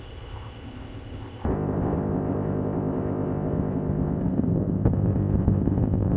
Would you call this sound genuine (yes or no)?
no